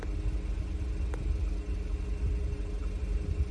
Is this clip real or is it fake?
real